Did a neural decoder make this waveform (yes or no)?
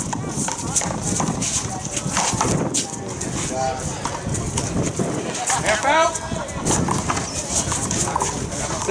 no